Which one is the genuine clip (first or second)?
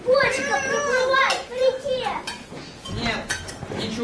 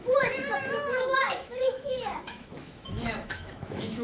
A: first